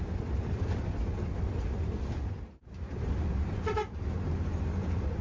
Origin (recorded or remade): recorded